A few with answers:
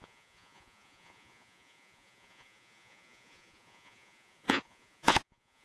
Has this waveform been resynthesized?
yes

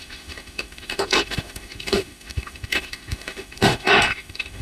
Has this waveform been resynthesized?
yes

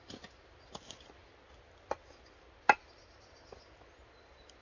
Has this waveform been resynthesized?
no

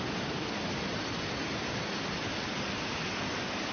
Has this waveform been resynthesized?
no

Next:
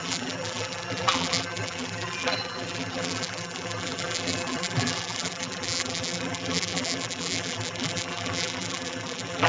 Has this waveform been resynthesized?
yes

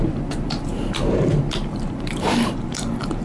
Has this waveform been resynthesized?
yes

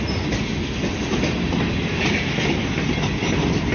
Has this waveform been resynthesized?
no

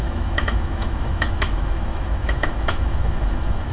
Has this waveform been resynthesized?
yes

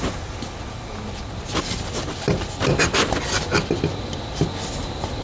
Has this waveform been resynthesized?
no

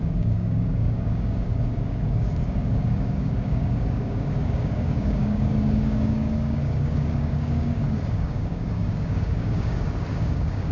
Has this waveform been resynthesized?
yes